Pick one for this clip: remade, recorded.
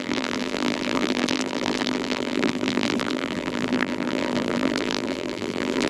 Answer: remade